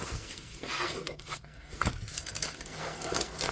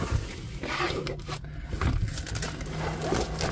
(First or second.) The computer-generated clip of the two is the first